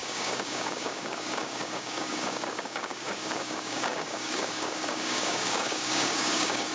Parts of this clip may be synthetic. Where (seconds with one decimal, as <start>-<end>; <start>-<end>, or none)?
0.0-6.7